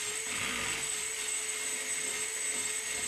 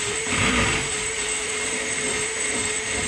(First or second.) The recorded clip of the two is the first